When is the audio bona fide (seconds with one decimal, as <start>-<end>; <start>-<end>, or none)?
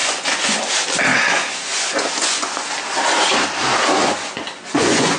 0.6-1.1; 2.7-4.0